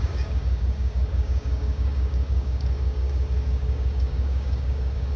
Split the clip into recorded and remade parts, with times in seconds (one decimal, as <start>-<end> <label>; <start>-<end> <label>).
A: 0.0-5.2 remade